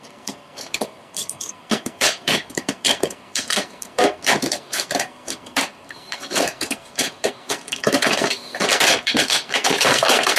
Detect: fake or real fake